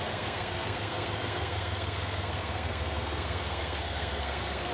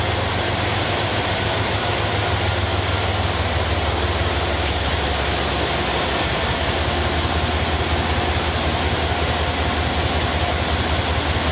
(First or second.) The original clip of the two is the second